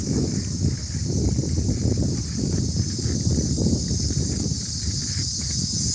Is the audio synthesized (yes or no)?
no